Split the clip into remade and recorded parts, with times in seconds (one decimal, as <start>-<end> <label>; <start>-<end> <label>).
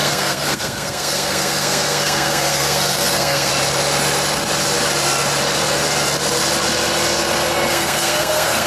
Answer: 0.0-3.5 remade; 3.5-7.7 recorded; 7.7-8.7 remade